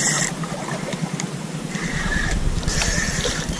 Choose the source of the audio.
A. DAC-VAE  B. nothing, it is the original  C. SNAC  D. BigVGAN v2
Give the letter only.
D